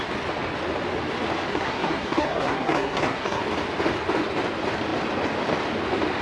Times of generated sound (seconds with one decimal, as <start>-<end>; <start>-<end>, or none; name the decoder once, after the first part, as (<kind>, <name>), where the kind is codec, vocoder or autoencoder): 1.5-3.4 (codec, SNAC)